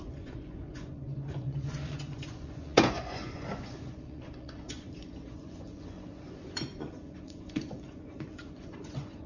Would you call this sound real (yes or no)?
no